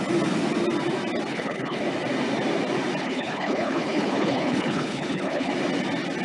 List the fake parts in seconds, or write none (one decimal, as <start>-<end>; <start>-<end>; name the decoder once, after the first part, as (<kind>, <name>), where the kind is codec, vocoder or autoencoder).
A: 1.3-1.8 (codec, HILCodec); 3.0-5.5